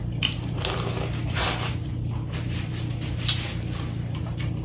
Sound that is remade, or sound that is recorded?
recorded